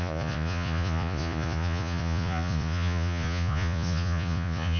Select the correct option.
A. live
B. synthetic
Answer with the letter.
B